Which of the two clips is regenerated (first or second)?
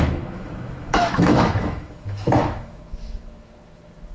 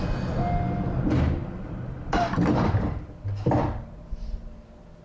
first